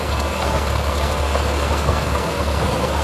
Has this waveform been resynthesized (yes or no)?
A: yes